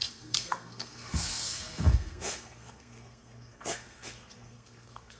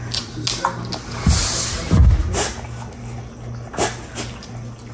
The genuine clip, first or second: second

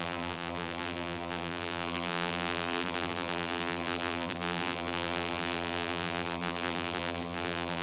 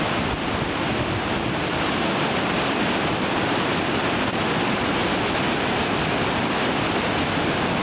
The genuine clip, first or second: second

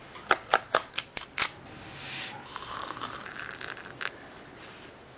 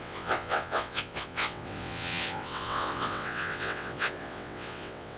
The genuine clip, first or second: first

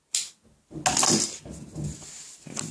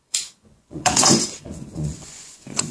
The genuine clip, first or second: first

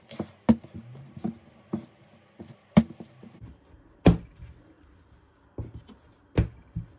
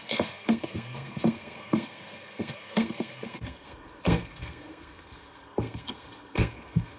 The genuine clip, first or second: first